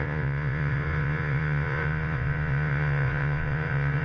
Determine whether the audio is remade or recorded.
remade